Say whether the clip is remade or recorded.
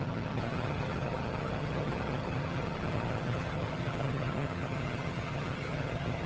remade